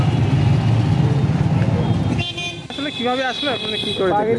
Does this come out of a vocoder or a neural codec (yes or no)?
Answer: no